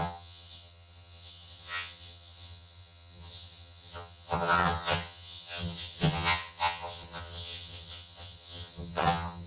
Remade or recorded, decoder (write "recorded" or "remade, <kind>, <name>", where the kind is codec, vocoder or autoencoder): remade, vocoder, HiFi-GAN